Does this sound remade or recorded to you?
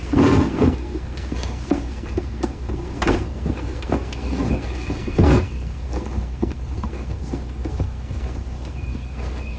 remade